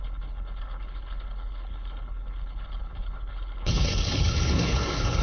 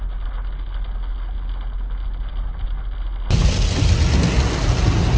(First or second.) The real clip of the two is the second